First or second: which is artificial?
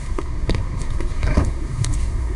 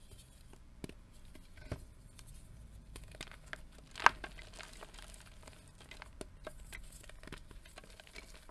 first